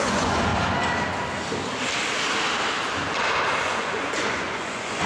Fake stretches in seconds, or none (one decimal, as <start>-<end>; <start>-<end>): 0.0-0.5; 3.6-5.1